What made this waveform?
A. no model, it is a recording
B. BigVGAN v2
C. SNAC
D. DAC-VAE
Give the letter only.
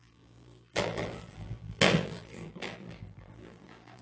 B